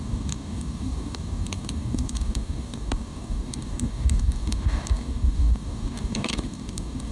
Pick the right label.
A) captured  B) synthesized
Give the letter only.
B